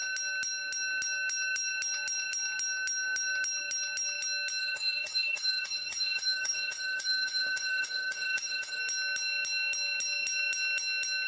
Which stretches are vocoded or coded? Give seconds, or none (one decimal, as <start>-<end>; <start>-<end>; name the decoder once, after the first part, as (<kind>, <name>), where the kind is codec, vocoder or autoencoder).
4.6-8.8 (autoencoder, DAC-VAE)